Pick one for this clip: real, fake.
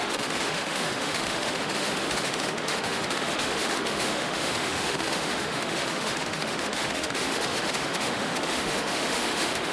fake